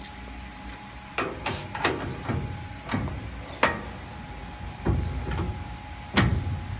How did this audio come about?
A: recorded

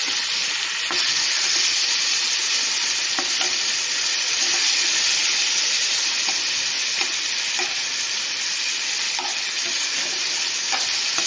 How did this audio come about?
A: recorded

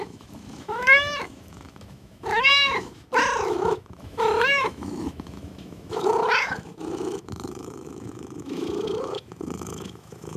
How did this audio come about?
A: remade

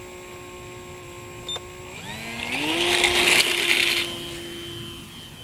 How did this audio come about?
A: recorded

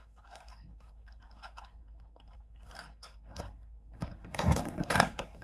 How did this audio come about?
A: remade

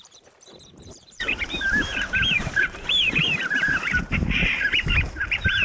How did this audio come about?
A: remade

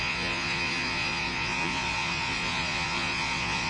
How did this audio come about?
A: remade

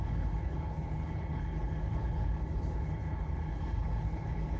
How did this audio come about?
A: remade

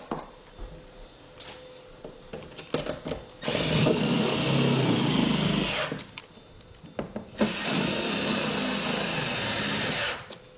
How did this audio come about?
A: recorded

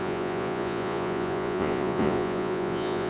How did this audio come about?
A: remade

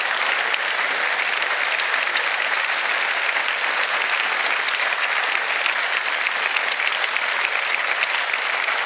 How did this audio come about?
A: recorded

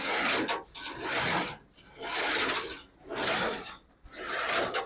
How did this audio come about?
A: recorded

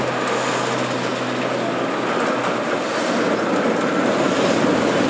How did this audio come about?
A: recorded